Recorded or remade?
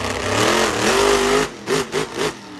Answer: recorded